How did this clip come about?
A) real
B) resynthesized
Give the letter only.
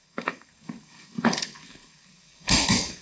B